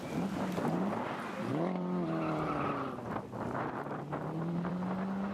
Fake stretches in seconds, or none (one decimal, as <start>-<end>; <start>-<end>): 1.5-4.7